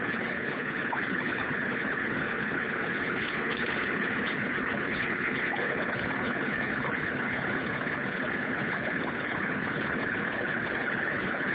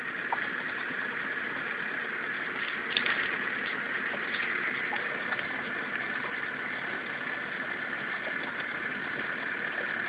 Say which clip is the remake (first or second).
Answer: first